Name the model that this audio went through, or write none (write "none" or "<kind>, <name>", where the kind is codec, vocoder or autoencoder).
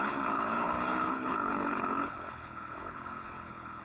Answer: codec, HILCodec